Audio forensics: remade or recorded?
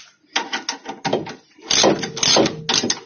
recorded